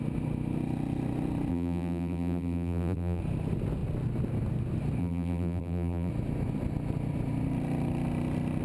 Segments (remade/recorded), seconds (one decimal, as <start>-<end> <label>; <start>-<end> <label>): 0.0-1.5 recorded; 1.5-3.2 remade; 3.2-5.0 recorded; 5.0-6.1 remade; 6.1-8.6 recorded

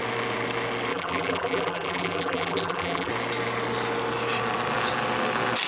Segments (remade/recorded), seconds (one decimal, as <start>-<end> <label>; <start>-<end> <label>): 0.0-0.9 recorded; 0.9-3.1 remade; 3.1-5.7 recorded

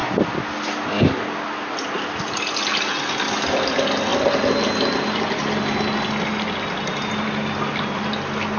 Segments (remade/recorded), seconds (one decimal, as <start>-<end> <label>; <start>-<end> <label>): 0.0-8.6 recorded